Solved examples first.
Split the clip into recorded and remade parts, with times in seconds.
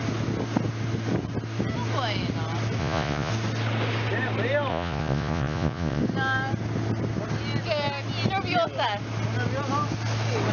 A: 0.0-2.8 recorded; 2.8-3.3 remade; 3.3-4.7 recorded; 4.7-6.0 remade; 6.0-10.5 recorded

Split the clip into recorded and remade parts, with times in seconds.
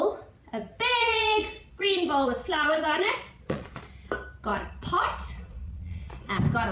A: 0.0-1.0 recorded; 1.0-3.8 remade; 3.8-4.5 recorded; 4.5-6.3 remade; 6.3-6.7 recorded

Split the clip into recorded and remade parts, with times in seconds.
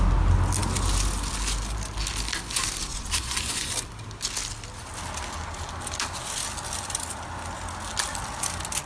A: 0.0-2.9 recorded; 2.9-3.7 remade; 3.7-8.9 recorded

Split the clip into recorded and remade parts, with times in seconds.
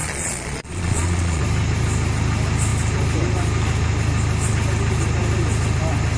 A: 0.0-1.4 remade; 1.4-6.2 recorded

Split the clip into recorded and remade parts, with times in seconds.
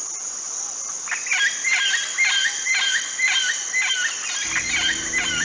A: 0.0-5.4 recorded